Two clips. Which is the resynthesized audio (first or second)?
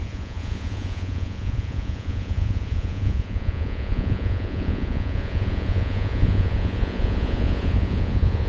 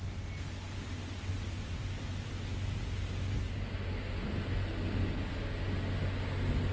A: first